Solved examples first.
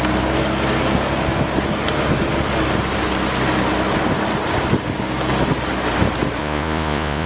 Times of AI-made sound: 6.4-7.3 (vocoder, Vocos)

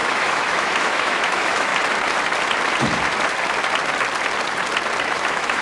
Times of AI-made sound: 0.0-1.7 (autoencoder, DAC-VAE); 5.0-5.6

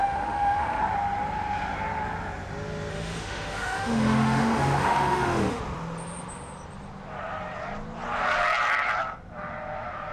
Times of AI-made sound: 0.0-0.8 (autoencoder, DAC-VAE); 2.9-5.6

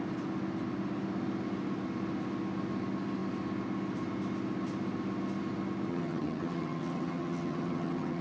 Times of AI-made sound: 5.9-8.2 (vocoder, HiFi-GAN)

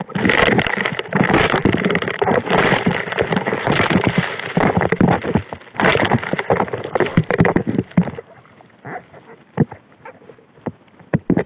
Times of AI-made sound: 0.9-4.7 (vocoder, BigVGAN v2); 5.9-6.5

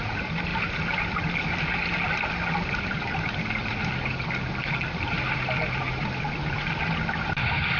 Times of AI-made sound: none

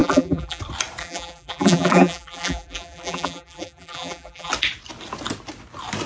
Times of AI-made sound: 0.0-0.6 (vocoder, BigVGAN v2); 1.0-4.5